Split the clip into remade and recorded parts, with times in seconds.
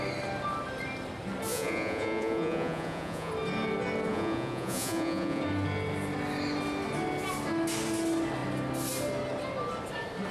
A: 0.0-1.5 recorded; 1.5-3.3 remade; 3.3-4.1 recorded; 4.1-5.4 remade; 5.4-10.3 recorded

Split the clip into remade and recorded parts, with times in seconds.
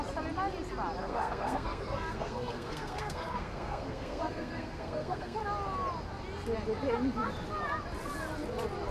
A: 0.0-1.0 recorded; 1.0-5.4 remade; 5.4-8.9 recorded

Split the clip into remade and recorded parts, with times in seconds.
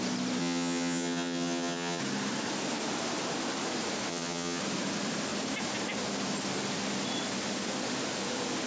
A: 0.0-0.4 recorded; 0.4-2.0 remade; 2.0-4.1 recorded; 4.1-4.6 remade; 4.6-8.7 recorded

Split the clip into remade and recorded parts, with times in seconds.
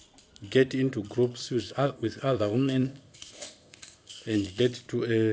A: 0.0-1.4 recorded; 1.4-4.6 remade; 4.6-5.3 recorded